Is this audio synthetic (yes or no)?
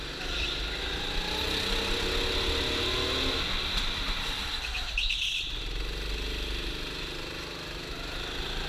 no